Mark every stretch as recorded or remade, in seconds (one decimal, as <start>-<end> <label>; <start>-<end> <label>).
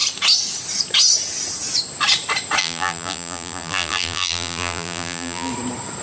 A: 0.0-2.6 recorded; 2.6-5.5 remade; 5.5-6.0 recorded